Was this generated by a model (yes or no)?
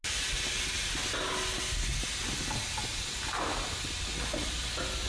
no